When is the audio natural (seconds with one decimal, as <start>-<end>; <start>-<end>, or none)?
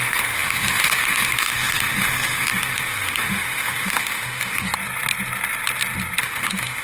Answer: 4.7-6.2